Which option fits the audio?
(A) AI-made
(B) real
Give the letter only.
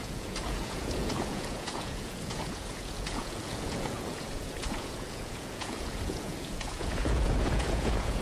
A